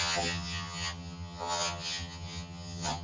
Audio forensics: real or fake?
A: fake